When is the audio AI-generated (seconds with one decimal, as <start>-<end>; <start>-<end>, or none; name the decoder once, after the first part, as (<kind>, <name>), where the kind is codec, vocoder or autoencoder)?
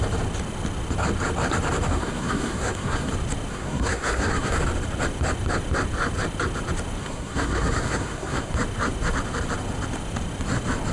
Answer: 1.9-3.1 (codec, SNAC); 3.5-4.6; 7.0-8.5